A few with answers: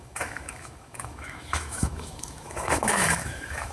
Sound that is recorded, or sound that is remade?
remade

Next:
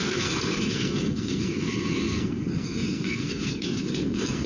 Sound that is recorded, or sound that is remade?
remade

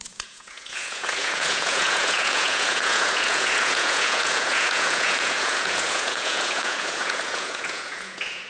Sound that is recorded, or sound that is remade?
remade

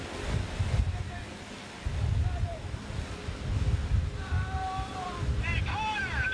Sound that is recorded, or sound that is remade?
recorded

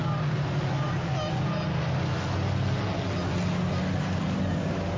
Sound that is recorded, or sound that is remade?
recorded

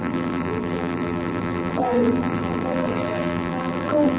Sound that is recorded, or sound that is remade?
remade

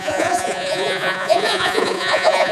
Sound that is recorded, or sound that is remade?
remade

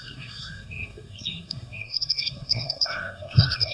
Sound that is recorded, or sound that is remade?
remade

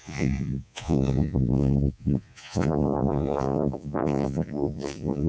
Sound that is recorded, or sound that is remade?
remade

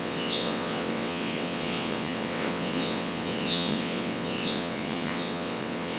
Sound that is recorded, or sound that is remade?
remade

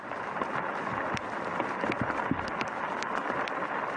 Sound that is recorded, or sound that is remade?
recorded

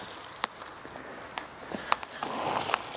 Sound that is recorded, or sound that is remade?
recorded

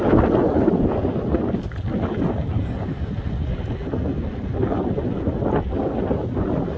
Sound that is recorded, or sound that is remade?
recorded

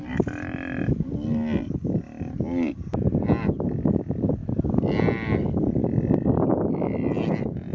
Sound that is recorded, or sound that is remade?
recorded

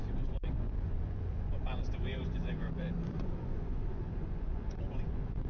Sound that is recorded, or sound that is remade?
remade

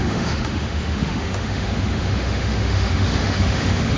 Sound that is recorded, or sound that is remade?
remade